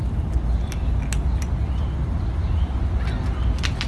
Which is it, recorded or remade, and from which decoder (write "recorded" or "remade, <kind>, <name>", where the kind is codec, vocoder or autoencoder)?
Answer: recorded